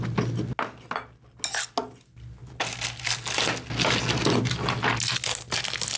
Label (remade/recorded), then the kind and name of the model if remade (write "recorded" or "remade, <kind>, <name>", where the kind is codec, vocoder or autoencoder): recorded